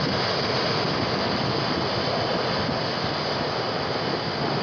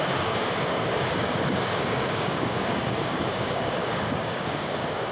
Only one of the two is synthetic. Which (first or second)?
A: second